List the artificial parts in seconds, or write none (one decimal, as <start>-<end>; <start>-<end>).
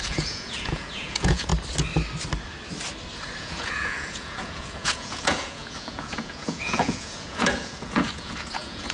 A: 0.0-1.5; 3.4-8.9